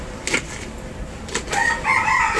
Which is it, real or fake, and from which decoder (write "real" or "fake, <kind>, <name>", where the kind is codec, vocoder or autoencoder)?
real